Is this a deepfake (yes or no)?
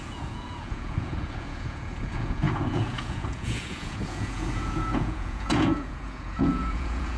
yes